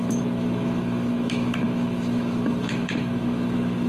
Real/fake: fake